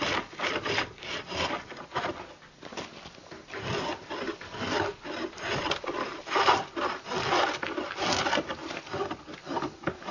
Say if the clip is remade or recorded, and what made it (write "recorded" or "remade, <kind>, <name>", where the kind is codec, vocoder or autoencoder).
recorded